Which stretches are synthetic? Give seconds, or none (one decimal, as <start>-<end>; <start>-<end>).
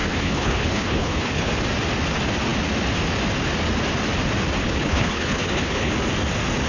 0.0-1.5; 4.6-5.9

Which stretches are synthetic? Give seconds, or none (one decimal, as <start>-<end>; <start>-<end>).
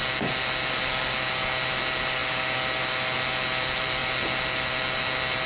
none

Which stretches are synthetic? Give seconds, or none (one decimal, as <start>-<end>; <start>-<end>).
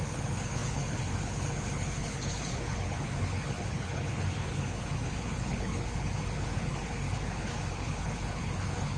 0.0-9.0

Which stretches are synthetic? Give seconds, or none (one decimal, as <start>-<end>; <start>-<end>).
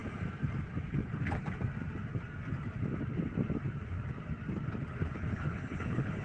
0.9-1.4; 4.9-6.2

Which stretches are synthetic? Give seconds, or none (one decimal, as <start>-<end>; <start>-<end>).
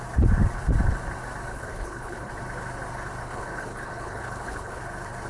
1.5-2.3; 3.2-4.8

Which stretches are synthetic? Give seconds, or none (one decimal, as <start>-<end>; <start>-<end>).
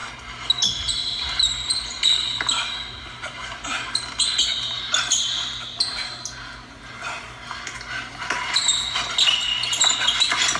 none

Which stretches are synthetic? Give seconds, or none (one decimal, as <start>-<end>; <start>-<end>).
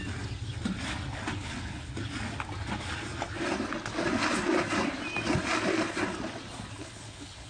1.3-1.9; 6.8-7.5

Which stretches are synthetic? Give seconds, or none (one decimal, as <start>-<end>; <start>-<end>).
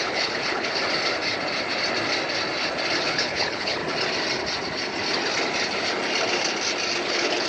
0.0-0.8; 3.0-3.8; 7.1-7.5